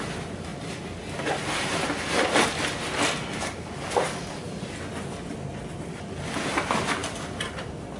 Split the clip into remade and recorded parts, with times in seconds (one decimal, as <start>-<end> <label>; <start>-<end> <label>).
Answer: 0.0-8.0 recorded